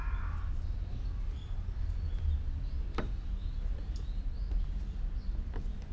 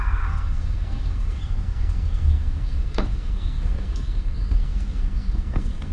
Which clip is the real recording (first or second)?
first